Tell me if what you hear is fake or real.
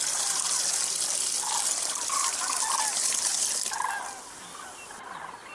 real